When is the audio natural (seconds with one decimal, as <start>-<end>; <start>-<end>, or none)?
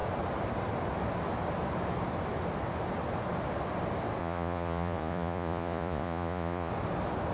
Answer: 0.0-4.2; 6.7-7.3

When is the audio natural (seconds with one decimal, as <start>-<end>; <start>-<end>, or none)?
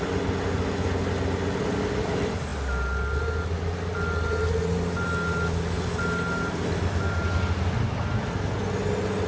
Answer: 0.0-9.3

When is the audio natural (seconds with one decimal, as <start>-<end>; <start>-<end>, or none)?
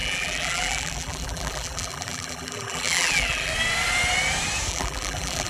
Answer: 3.5-4.7